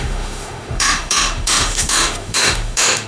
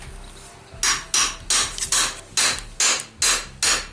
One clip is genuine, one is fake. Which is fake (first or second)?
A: first